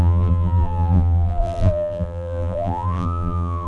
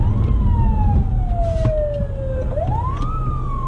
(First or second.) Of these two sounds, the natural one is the second